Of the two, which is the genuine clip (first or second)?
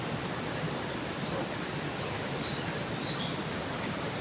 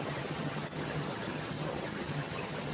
first